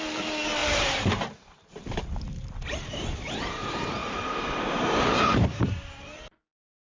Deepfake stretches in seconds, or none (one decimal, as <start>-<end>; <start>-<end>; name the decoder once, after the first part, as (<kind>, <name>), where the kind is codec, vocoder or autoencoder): 0.6-2.0 (vocoder, BigVGAN v2); 4.0-6.2